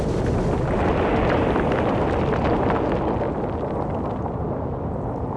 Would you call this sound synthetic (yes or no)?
no